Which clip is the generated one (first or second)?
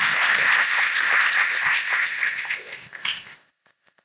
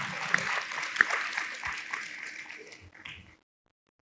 first